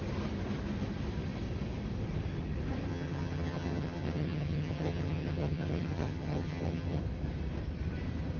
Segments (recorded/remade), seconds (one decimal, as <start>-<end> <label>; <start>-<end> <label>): 0.0-2.9 recorded; 2.9-7.0 remade; 7.0-8.4 recorded